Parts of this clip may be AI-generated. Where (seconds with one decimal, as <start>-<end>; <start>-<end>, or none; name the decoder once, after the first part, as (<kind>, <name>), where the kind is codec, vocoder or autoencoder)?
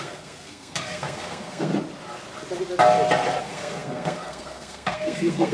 0.0-1.7 (codec, SNAC); 3.4-5.5